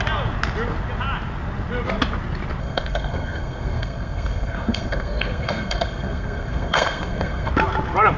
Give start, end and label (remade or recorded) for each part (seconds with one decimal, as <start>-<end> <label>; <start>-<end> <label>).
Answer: 0.0-2.6 recorded; 2.6-7.5 remade; 7.5-8.2 recorded